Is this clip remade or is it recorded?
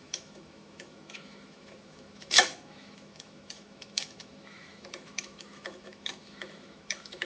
remade